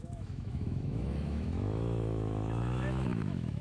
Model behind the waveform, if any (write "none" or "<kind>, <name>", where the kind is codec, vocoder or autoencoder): autoencoder, DAC-VAE